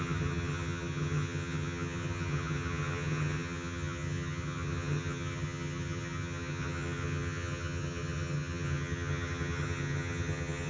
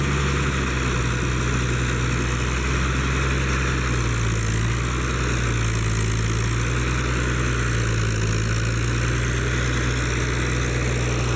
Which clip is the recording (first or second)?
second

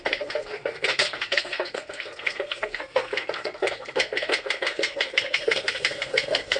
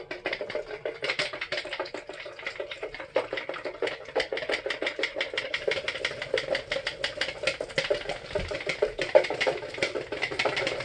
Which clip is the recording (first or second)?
second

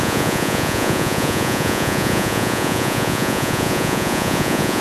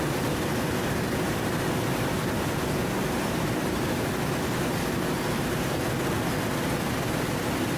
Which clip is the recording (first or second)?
second